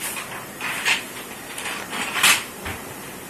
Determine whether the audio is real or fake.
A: fake